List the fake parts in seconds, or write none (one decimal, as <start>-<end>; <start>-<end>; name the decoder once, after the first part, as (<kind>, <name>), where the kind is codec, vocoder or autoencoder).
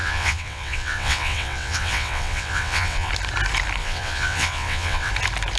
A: 0.0-3.1 (vocoder, WaveNeXt); 3.8-5.1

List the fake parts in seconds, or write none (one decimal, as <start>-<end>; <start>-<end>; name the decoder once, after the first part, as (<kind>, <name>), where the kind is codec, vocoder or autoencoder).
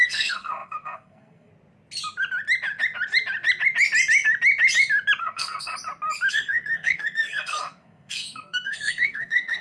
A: 0.0-1.5 (codec, SNAC); 5.2-5.7; 6.3-9.6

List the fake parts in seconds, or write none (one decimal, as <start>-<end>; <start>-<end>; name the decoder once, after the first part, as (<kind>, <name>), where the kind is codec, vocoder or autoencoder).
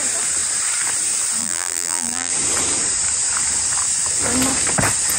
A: 1.4-2.3 (vocoder, BigVGAN v2)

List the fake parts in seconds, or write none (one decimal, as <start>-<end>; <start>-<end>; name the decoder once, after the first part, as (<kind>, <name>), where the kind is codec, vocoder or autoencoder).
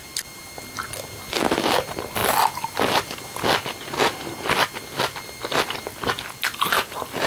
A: none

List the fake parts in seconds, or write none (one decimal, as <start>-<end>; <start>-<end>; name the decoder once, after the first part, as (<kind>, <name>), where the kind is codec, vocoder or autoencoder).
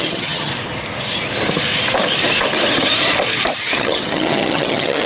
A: 0.0-0.5 (vocoder, HiFi-GAN); 3.6-5.1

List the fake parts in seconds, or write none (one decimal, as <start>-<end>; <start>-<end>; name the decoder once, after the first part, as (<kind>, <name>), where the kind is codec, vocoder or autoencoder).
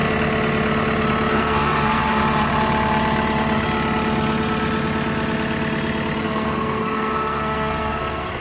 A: 1.3-2.2 (codec, SNAC); 6.2-8.4